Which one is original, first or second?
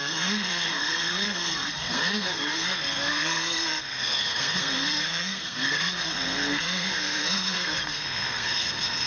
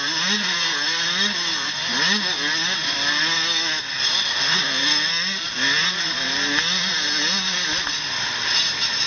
second